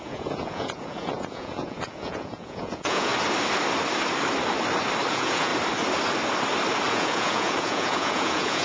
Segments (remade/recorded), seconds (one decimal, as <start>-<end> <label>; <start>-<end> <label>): 0.0-3.1 remade; 3.1-5.1 recorded; 5.1-5.5 remade; 5.5-6.9 recorded; 6.9-8.6 remade